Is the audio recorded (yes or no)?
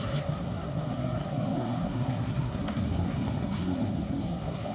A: no